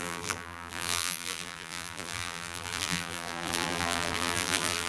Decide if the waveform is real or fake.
fake